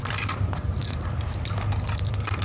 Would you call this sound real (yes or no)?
yes